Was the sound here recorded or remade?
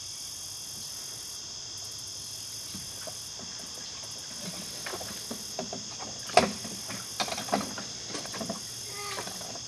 recorded